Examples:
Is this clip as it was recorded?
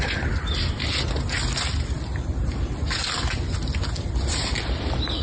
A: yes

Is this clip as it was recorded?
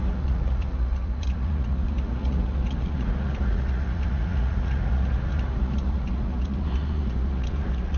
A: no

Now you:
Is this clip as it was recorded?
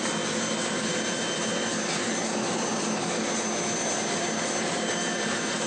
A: yes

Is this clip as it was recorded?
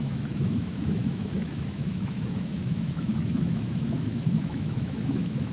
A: no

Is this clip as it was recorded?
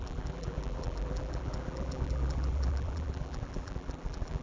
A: no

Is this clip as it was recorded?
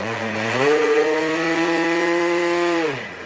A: no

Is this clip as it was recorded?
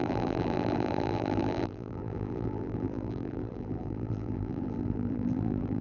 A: no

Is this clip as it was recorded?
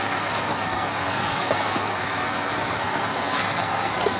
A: no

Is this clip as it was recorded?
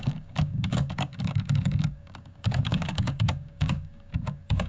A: no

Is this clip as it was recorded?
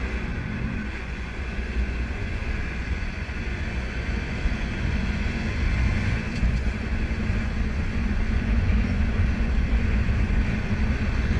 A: no